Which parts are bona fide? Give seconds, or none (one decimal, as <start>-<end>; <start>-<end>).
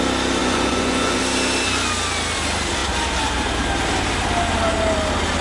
0.0-0.4; 1.2-5.4